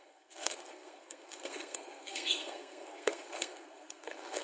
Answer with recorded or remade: remade